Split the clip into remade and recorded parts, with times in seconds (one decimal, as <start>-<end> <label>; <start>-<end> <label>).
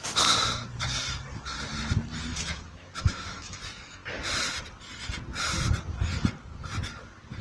0.0-2.3 recorded; 2.3-3.6 remade; 3.6-7.4 recorded